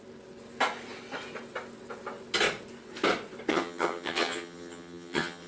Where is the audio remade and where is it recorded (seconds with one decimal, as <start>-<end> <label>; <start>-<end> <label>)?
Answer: 0.0-3.5 recorded; 3.5-5.5 remade